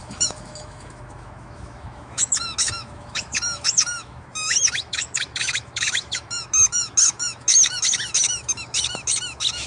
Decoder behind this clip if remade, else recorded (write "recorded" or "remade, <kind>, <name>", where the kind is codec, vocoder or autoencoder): remade, autoencoder, DAC-VAE